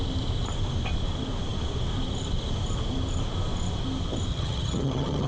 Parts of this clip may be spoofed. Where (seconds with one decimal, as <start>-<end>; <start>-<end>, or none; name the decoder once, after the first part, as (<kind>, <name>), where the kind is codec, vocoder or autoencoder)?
4.3-5.3 (vocoder, HiFi-GAN)